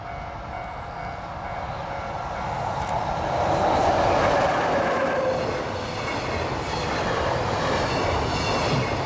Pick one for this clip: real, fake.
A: real